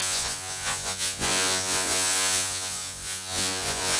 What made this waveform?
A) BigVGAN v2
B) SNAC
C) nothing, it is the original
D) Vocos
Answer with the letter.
D